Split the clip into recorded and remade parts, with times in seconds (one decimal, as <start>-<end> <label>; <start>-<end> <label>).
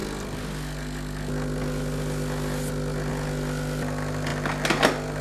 0.0-5.2 recorded